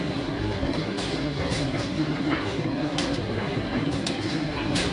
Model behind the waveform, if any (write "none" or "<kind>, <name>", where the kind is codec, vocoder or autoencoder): codec, SNAC